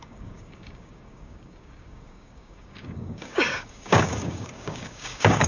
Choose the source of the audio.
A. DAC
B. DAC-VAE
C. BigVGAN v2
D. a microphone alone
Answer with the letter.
A